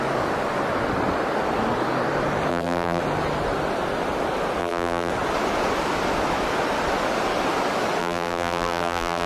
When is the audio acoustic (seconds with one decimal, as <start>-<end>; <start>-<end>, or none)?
0.0-2.5; 3.0-4.6; 5.1-8.0